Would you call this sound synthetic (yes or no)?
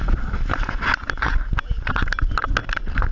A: no